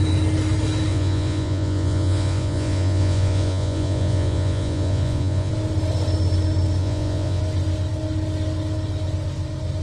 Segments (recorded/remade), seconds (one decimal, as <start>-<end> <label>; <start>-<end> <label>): 0.0-0.9 recorded; 0.9-5.5 remade; 5.5-6.8 recorded; 6.8-7.4 remade; 7.4-9.8 recorded